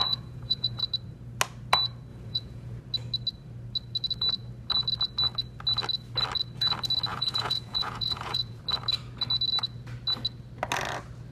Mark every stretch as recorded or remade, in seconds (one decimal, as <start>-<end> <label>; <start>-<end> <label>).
0.0-0.8 remade; 0.8-2.1 recorded; 2.1-2.8 remade; 2.8-7.1 recorded; 7.1-8.6 remade; 8.6-11.3 recorded